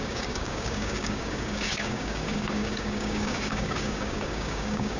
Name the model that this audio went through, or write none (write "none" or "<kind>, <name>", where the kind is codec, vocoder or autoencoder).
codec, DAC